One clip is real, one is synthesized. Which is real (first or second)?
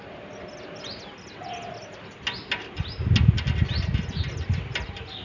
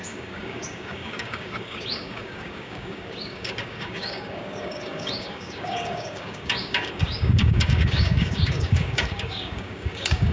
first